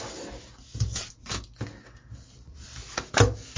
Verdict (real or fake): real